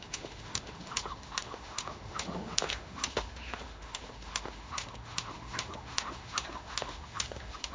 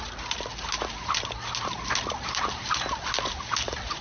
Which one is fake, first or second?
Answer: first